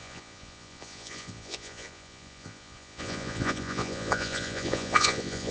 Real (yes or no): no